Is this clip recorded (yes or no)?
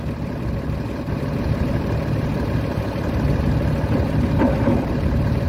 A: no